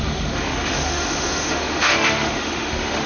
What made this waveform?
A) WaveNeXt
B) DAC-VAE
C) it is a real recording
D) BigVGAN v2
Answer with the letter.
B